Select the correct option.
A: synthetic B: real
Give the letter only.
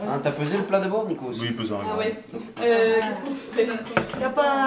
B